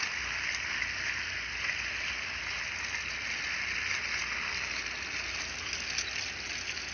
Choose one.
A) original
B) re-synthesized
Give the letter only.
A